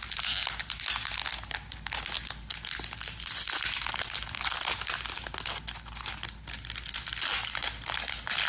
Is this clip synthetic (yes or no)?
no